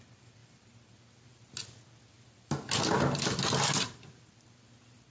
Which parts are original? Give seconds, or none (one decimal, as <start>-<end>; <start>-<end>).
0.0-5.1